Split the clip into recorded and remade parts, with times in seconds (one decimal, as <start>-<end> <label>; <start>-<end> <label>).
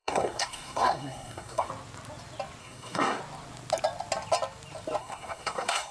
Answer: 0.0-1.7 remade; 1.7-2.6 recorded; 2.6-3.2 remade; 3.2-5.0 recorded; 5.0-5.9 remade